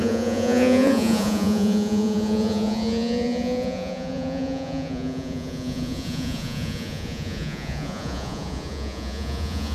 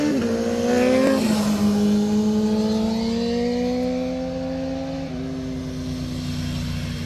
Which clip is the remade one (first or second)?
first